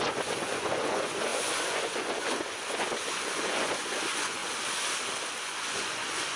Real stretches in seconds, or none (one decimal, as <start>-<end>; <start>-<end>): 4.4-5.4